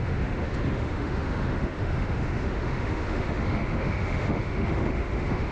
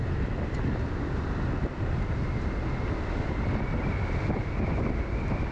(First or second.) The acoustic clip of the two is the second